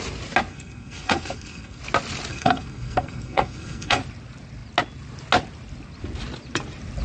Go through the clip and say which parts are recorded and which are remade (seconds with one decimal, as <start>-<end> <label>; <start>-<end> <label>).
0.0-0.5 recorded; 0.5-1.8 remade; 1.8-2.3 recorded; 2.3-4.0 remade; 4.0-7.0 recorded